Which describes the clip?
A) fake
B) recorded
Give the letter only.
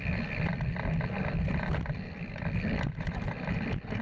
B